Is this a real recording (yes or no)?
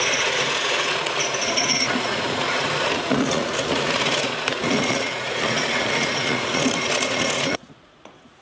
no